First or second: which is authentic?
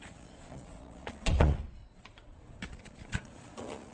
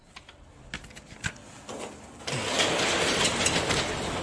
second